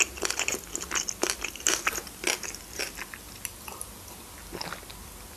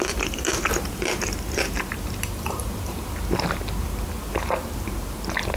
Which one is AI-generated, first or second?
second